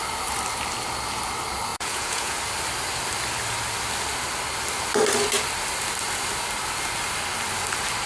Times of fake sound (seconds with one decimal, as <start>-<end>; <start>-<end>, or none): 1.7-2.4